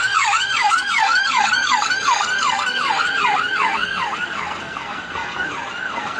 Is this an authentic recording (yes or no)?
no